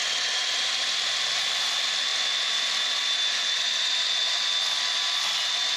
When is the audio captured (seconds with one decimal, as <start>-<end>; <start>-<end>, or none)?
0.0-5.8